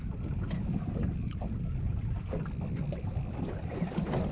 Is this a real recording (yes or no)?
yes